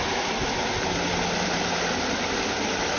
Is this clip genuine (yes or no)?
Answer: yes